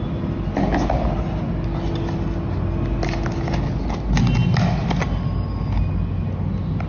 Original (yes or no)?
yes